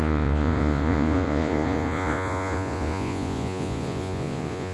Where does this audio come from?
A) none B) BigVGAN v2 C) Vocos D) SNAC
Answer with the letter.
C